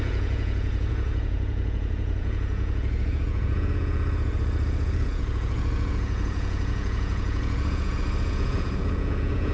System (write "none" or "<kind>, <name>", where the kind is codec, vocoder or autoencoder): vocoder, Vocos